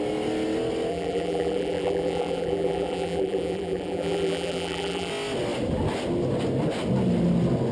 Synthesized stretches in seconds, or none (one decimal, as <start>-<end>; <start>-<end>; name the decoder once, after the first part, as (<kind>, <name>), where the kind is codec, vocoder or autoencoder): 0.9-5.1 (vocoder, BigVGAN v2)